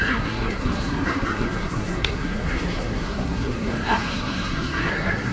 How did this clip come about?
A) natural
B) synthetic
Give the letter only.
B